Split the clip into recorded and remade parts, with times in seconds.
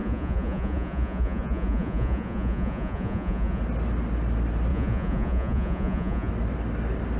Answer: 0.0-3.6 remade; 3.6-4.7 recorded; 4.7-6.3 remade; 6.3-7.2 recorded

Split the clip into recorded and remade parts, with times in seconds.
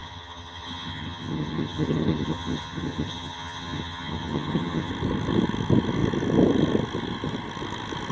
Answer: 0.0-4.9 remade; 4.9-8.1 recorded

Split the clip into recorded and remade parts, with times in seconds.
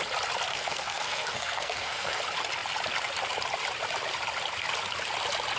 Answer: 0.0-0.5 recorded; 0.5-2.2 remade; 2.2-5.6 recorded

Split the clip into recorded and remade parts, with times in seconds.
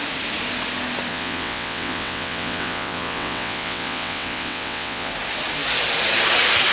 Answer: 0.0-1.1 recorded; 1.1-5.1 remade; 5.1-6.7 recorded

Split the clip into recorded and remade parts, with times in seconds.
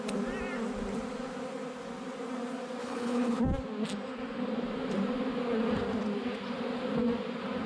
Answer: 0.0-2.8 recorded; 2.8-3.4 remade; 3.4-7.7 recorded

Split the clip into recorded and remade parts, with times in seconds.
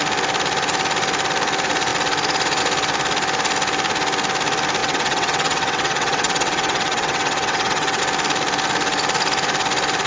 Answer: 0.0-4.8 recorded; 4.8-8.0 remade; 8.0-10.1 recorded